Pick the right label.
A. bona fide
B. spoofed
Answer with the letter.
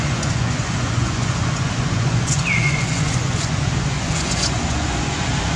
B